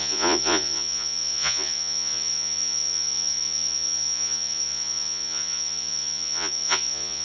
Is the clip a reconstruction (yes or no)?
yes